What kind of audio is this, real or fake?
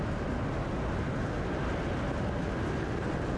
real